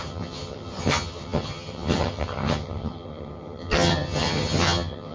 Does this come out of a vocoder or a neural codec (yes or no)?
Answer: yes